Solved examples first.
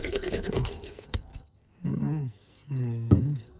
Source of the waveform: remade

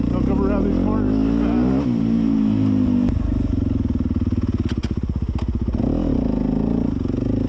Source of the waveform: recorded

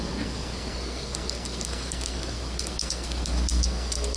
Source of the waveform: remade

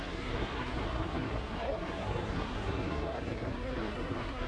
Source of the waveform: remade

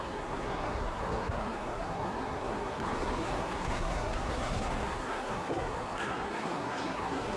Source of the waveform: remade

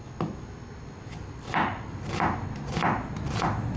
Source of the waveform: recorded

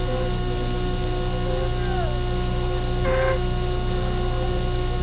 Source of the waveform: recorded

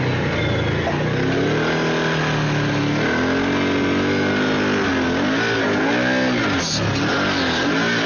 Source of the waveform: recorded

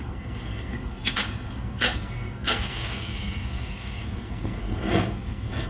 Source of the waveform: remade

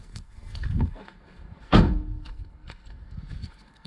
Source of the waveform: remade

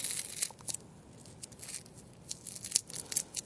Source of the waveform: recorded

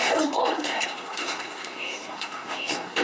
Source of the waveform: remade